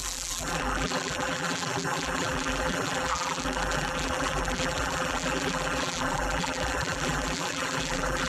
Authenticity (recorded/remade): remade